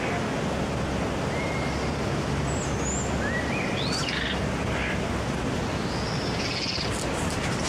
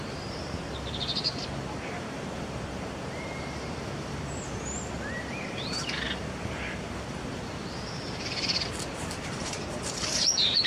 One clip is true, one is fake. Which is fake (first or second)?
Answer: second